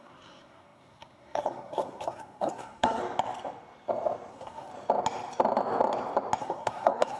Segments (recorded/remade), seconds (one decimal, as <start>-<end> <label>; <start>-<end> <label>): 0.0-3.0 remade; 3.0-4.3 recorded; 4.3-4.7 remade; 4.7-6.4 recorded; 6.4-7.2 remade